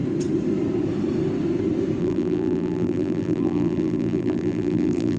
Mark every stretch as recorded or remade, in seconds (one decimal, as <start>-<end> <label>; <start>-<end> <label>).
0.0-2.0 recorded; 2.0-5.2 remade